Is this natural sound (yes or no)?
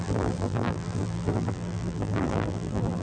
no